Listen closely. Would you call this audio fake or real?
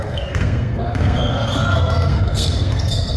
fake